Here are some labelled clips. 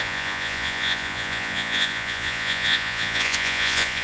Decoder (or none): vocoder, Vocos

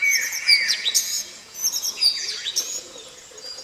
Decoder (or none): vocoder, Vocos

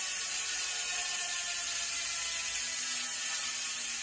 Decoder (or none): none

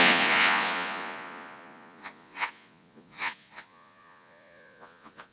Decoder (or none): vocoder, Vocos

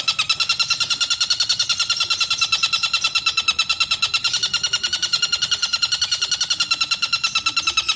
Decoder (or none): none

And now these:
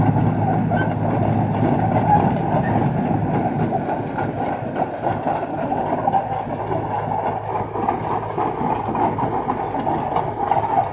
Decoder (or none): none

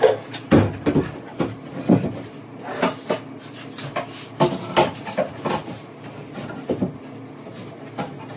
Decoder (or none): none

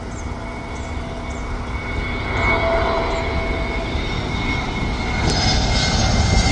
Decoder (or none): none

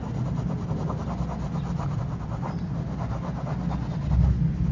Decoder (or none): none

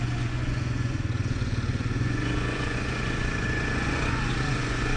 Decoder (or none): vocoder, Vocos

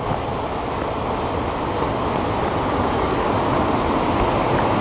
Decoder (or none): none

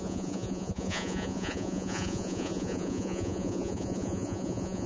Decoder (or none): vocoder, Vocos